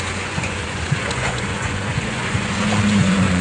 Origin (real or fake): fake